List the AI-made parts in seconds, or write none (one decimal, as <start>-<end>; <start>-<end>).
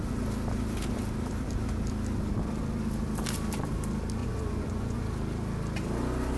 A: 4.2-5.0